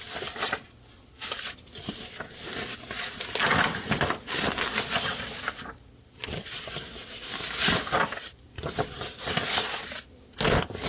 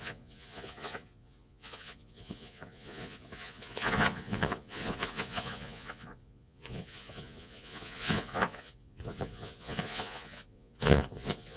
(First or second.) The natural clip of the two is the first